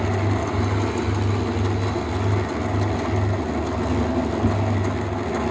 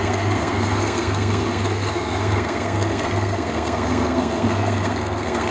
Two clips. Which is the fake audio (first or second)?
second